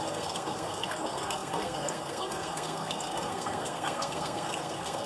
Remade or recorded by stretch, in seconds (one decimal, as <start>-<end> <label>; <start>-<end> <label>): 0.0-5.1 remade